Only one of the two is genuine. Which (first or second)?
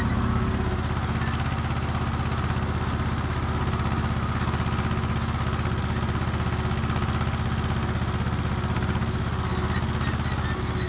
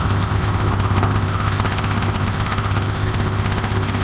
first